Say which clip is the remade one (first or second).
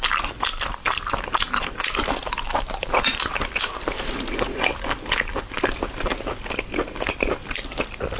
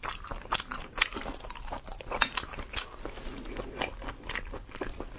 first